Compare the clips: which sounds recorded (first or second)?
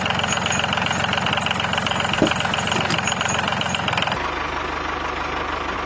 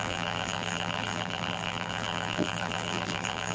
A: first